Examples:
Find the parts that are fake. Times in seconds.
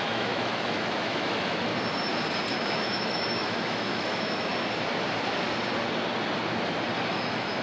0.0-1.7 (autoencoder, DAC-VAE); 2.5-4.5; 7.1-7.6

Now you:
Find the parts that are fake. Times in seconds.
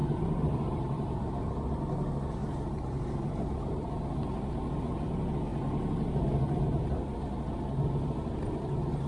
0.0-1.4 (vocoder, BigVGAN v2); 2.4-4.6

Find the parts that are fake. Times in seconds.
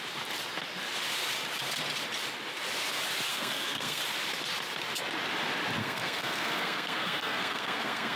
3.3-4.0 (codec, SNAC); 5.8-8.2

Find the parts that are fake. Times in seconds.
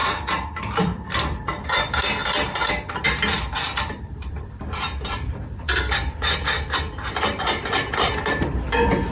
0.6-2.2 (vocoder, BigVGAN v2); 2.7-9.1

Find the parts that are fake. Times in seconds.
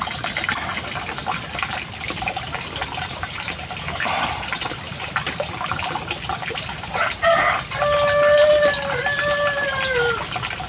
8.3-9.0 (vocoder, BigVGAN v2)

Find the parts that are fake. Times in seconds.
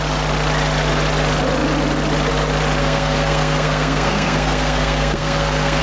2.8-5.8 (codec, SNAC)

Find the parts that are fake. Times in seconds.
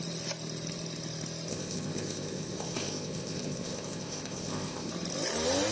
1.5-4.9 (codec, ZipCodec)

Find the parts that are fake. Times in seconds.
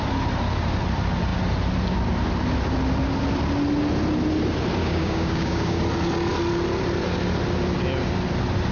4.8-5.8 (codec, DAC)